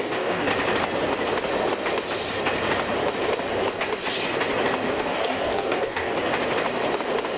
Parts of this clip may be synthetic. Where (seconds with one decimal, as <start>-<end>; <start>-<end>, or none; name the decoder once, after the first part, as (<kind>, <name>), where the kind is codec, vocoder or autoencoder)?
0.0-0.5 (codec, DAC); 4.9-6.1